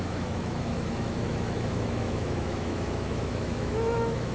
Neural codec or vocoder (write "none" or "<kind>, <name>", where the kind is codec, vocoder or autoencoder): autoencoder, DAC-VAE